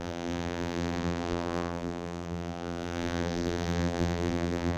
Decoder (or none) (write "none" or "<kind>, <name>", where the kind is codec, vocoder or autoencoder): vocoder, BigVGAN v2